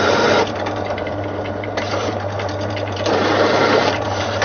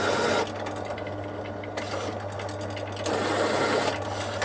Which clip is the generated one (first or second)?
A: first